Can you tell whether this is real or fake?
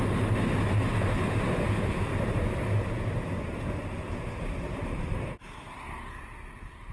real